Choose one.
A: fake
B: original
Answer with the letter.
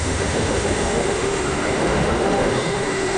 A